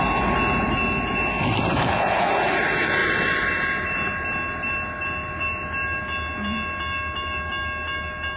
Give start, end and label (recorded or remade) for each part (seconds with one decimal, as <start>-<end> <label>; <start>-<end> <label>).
0.0-8.4 recorded